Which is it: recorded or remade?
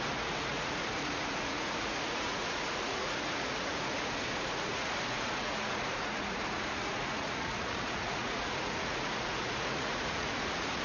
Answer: remade